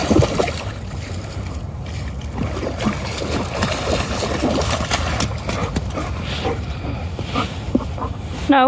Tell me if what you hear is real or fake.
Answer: real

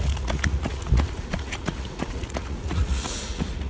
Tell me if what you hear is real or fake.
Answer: fake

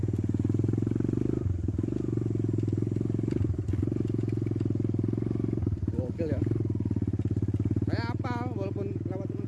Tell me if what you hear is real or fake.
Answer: real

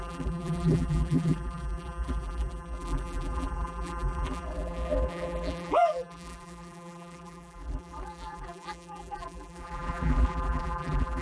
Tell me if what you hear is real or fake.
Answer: fake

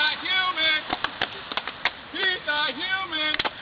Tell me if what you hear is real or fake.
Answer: fake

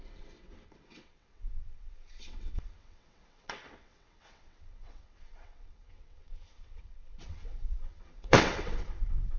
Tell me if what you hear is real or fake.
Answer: fake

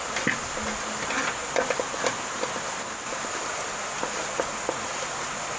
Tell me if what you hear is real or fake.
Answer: real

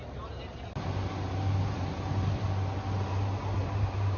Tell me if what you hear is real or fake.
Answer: real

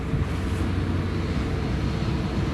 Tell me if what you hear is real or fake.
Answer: real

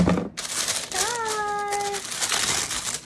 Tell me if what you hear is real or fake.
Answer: real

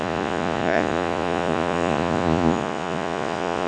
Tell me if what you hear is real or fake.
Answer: fake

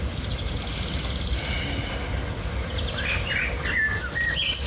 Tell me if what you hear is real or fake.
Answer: real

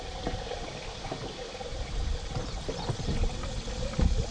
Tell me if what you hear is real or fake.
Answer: real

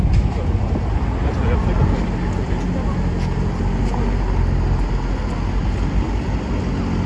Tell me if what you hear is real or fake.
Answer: real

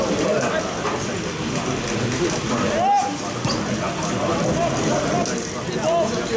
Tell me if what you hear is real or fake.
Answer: real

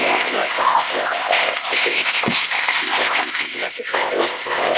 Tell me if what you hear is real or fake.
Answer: fake